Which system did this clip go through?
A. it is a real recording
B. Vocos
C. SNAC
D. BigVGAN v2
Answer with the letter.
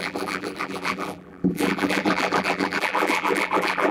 D